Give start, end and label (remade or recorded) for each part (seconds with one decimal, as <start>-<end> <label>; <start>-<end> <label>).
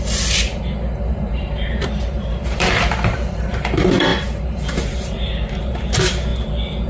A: 0.0-0.5 remade; 0.5-1.1 recorded; 1.1-6.3 remade; 6.3-6.9 recorded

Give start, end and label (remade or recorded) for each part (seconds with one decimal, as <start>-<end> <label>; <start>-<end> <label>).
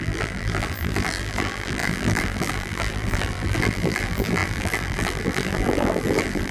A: 0.0-6.5 remade